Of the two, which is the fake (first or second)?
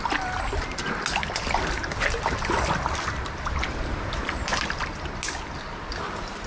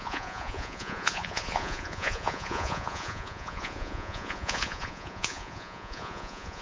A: second